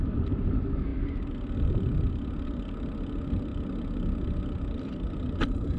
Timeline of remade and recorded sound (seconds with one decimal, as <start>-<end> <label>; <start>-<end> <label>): 0.0-5.8 recorded